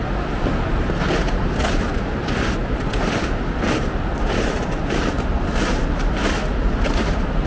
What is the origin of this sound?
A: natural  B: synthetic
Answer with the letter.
A